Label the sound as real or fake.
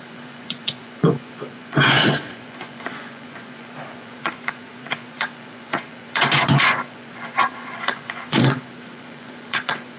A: fake